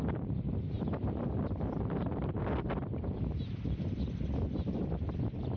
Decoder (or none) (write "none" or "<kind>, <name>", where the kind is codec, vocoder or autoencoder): vocoder, BigVGAN v2